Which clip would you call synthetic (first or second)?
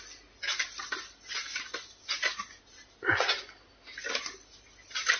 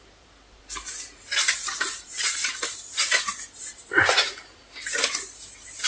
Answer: second